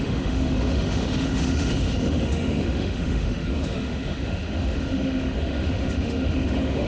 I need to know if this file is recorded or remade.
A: remade